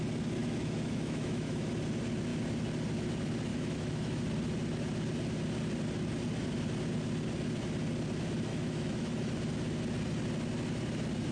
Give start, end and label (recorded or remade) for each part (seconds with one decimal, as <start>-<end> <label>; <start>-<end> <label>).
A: 0.0-0.4 recorded; 0.4-1.7 remade; 1.7-3.5 recorded; 3.5-4.2 remade; 4.2-8.5 recorded; 8.5-9.3 remade; 9.3-11.3 recorded